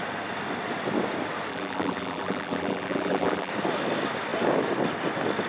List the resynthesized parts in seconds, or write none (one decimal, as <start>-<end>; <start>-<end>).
1.5-3.5